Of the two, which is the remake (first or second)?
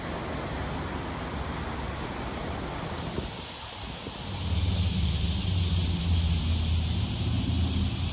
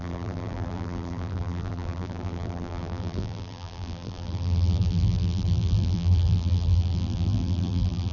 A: second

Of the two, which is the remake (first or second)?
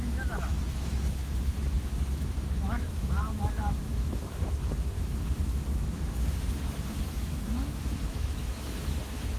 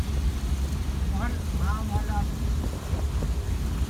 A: first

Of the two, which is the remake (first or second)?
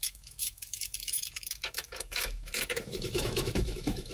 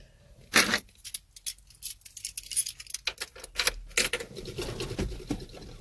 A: first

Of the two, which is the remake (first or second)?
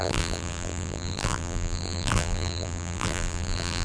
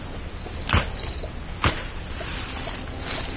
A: first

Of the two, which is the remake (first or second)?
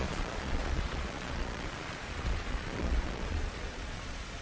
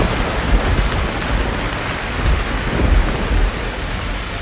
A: first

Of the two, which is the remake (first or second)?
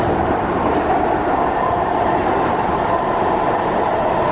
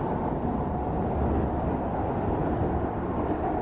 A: first